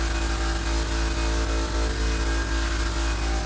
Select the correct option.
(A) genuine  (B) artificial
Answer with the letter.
A